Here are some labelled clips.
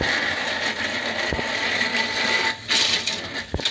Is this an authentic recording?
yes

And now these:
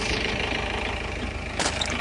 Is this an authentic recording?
no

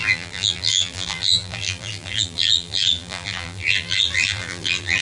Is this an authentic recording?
no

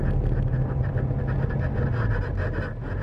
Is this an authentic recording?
yes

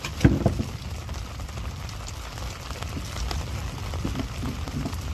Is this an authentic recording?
yes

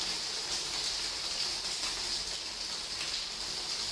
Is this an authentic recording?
yes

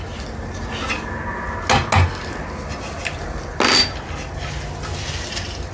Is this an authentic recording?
yes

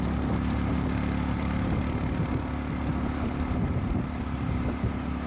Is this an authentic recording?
yes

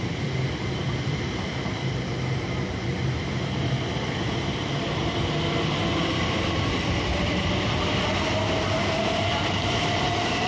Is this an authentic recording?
no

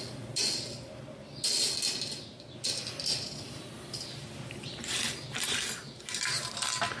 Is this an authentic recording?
yes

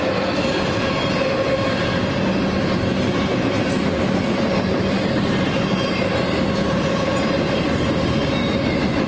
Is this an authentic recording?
yes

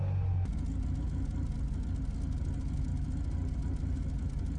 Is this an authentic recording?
yes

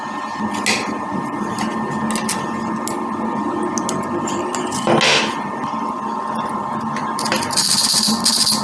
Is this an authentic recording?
yes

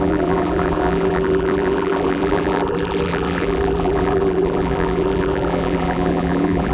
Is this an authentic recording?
no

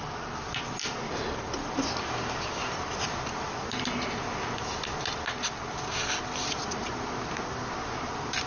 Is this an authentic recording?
yes